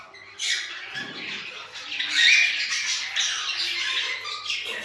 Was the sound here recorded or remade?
recorded